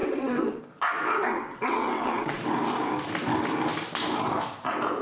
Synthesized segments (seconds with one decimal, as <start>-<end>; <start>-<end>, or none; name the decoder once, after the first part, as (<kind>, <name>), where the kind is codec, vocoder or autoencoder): 0.0-0.6 (vocoder, WaveNeXt); 1.3-2.4